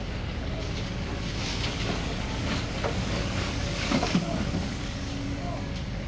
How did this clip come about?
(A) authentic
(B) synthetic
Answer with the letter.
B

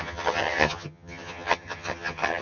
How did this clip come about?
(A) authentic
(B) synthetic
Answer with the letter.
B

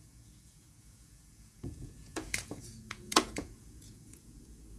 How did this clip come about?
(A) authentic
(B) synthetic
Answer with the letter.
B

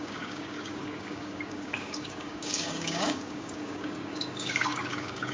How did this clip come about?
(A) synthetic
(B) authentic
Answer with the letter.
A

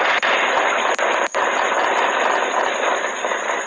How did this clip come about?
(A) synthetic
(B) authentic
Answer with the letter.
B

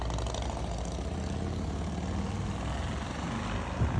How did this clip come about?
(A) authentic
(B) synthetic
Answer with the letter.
A